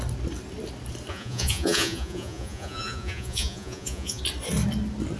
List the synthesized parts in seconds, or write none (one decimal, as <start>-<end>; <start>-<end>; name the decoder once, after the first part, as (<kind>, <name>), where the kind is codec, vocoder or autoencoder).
1.1-4.2 (vocoder, Vocos)